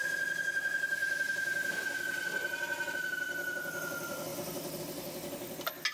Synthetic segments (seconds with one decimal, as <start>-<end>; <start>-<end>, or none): none